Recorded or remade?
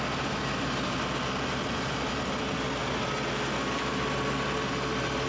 recorded